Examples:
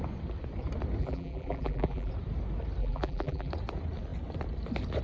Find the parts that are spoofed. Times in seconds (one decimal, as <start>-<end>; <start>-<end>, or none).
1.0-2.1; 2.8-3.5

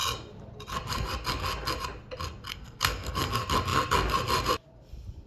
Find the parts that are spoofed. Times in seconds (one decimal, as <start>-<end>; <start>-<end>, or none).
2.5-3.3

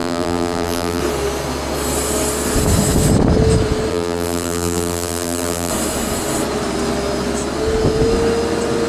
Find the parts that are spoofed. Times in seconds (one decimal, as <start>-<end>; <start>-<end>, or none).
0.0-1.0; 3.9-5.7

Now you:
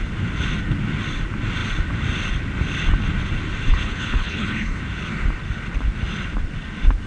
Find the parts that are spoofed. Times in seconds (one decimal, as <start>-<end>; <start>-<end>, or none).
3.7-4.8

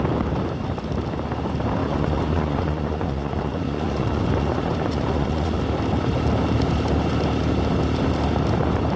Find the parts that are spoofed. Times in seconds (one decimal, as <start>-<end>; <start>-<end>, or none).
1.8-5.6

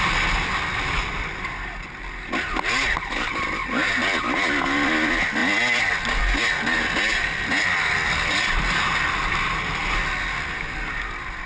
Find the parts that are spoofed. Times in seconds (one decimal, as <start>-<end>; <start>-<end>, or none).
none